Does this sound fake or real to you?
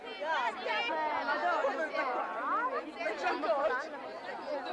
real